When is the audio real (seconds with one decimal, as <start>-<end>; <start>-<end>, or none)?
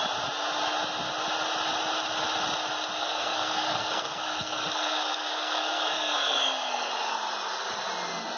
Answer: 0.0-3.0; 6.9-8.4